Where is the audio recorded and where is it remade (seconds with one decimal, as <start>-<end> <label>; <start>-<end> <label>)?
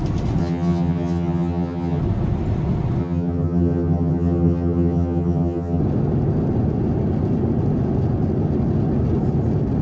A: 0.0-0.4 recorded; 0.4-2.0 remade; 2.0-3.0 recorded; 3.0-5.8 remade; 5.8-9.8 recorded